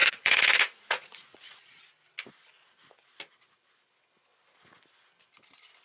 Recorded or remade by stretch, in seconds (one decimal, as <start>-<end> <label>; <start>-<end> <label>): 0.0-1.8 remade; 1.8-5.8 recorded